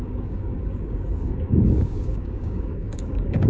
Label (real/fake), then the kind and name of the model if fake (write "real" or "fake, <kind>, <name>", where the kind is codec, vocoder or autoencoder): fake, codec, DAC